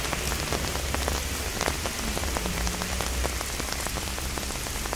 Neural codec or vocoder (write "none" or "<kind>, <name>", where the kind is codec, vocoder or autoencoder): none